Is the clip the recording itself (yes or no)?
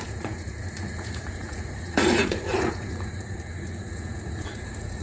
no